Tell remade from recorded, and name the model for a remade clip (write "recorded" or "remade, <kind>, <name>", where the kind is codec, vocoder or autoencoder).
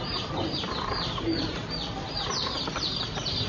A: recorded